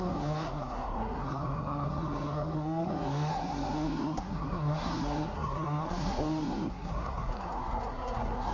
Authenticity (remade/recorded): remade